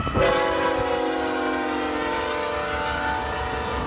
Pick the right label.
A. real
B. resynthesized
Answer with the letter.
A